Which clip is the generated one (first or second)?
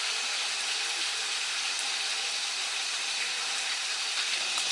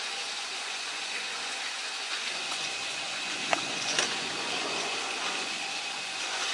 second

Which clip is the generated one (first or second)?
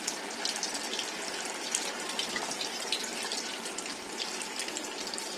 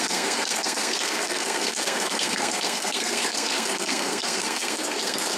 second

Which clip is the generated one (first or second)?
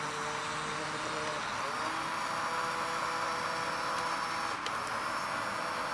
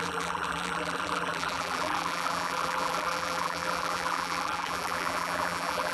second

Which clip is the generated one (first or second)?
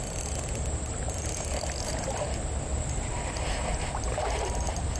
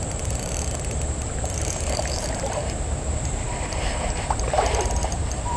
second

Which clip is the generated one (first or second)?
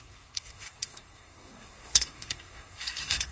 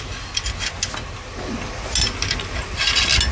first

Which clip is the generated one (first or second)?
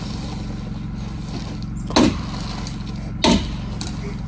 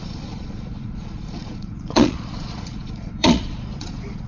second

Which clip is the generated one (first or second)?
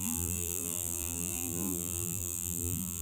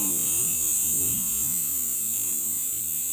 first